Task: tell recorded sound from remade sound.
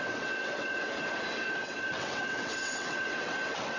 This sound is remade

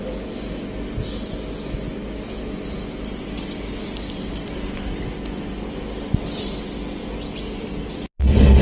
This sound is recorded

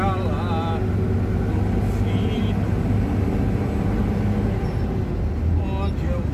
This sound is recorded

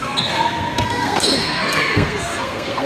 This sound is remade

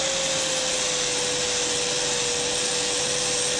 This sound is recorded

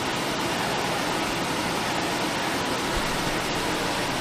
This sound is recorded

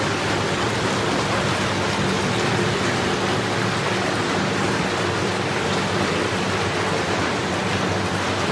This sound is recorded